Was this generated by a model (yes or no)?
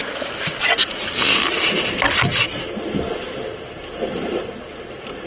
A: no